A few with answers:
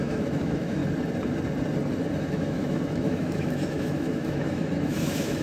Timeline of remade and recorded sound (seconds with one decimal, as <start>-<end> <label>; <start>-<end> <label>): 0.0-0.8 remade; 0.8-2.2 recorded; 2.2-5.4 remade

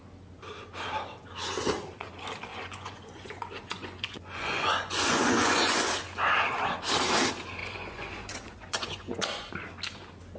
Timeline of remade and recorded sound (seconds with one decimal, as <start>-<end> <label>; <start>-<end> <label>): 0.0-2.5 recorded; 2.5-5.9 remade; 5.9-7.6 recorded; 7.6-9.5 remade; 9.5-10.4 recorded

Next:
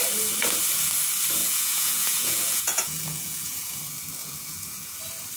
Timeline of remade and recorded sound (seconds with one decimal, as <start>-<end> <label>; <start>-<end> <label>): 0.0-1.4 recorded; 1.4-3.8 remade; 3.8-4.2 recorded; 4.2-5.0 remade; 5.0-5.4 recorded

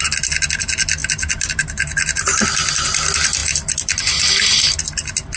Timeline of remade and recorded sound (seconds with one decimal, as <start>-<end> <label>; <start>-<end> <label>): 0.0-5.4 recorded

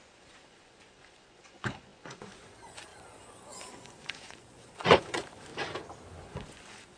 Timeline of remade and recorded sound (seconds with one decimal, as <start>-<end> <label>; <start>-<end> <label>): 0.0-5.5 remade; 5.5-6.2 recorded; 6.2-7.0 remade

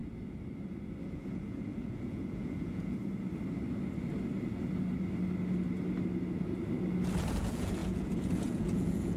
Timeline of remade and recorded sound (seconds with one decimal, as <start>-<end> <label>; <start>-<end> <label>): 0.0-1.0 recorded; 1.0-3.0 remade; 3.0-7.3 recorded; 7.3-9.2 remade

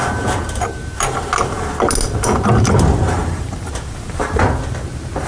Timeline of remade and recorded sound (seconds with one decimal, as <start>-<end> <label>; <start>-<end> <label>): 0.0-1.1 remade; 1.1-3.2 recorded; 3.2-4.4 remade; 4.4-5.3 recorded

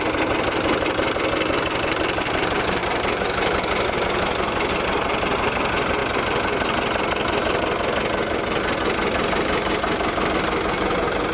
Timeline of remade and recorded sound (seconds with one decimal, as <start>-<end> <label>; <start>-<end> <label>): 0.0-11.3 recorded